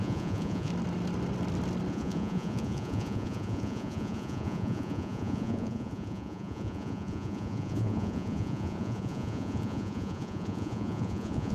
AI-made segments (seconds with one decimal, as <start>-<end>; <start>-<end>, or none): 0.0-0.7; 1.9-11.5